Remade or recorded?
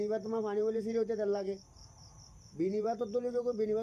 remade